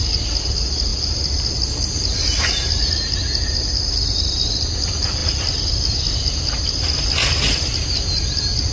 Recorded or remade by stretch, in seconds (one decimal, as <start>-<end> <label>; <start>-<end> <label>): 0.0-0.9 recorded; 0.9-1.6 remade; 1.6-5.2 recorded; 5.2-5.7 remade; 5.7-8.7 recorded